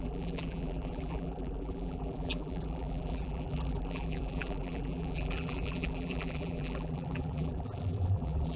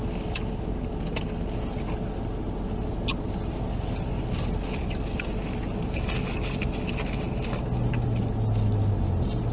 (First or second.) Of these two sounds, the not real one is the first